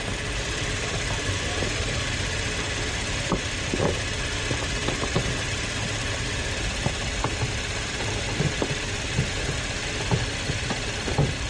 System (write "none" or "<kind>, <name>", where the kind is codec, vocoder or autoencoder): none